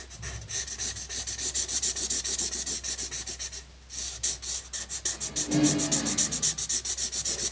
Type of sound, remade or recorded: recorded